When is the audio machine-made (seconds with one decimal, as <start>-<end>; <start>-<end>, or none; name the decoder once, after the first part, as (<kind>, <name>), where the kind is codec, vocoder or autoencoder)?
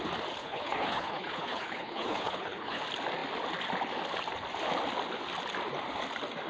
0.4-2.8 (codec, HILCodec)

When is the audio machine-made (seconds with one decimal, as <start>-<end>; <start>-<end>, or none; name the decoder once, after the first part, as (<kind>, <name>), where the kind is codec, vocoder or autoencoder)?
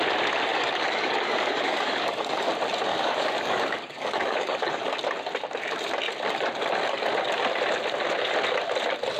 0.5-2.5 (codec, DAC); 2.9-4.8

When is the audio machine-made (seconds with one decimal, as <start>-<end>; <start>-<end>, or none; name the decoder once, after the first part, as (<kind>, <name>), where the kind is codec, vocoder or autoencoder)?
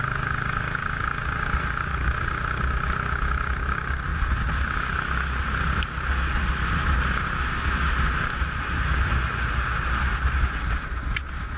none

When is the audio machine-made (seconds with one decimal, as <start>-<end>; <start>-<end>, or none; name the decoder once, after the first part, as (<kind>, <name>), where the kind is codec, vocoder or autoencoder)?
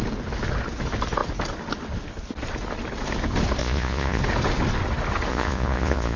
3.6-4.2 (vocoder, Vocos); 5.3-6.2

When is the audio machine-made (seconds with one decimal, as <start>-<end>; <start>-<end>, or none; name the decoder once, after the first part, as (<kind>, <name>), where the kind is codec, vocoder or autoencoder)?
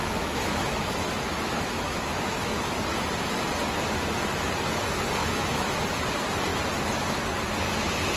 0.0-2.6 (autoencoder, DAC-VAE); 5.2-5.8